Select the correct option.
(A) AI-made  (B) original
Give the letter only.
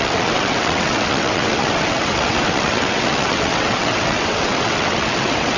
A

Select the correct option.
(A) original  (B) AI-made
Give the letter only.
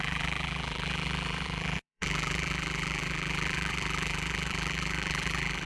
B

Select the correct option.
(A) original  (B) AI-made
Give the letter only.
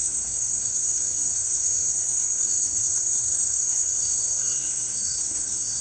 B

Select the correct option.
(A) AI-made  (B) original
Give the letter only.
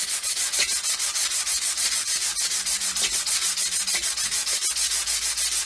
B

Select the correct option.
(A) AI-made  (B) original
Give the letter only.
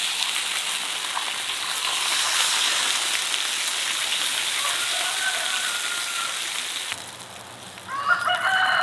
B